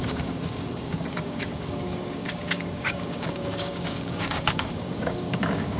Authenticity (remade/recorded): remade